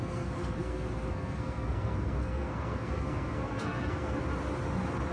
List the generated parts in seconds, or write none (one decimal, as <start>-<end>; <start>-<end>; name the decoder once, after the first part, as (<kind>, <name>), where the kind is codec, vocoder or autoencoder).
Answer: 0.0-4.2 (codec, SNAC)